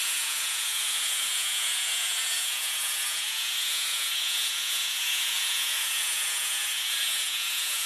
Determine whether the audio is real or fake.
fake